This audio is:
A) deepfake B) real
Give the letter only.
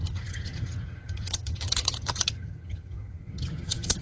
A